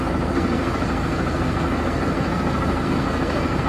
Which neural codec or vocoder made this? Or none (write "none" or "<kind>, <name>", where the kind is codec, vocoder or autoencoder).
codec, SNAC